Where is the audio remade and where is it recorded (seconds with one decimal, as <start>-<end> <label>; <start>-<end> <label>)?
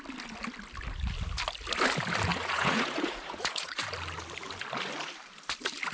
0.0-2.3 recorded; 2.3-3.8 remade; 3.8-5.9 recorded